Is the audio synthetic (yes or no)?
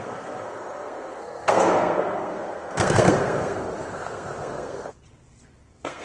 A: yes